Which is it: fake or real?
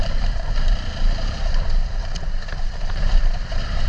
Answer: fake